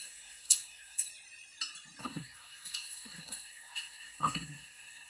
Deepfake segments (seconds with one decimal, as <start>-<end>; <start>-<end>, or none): 0.0-1.1; 2.0-5.1